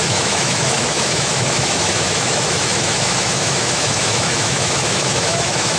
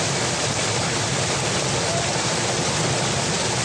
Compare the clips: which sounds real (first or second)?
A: second